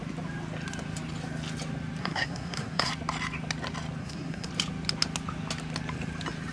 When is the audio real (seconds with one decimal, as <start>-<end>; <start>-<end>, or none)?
0.0-2.0; 2.9-4.0; 4.5-6.5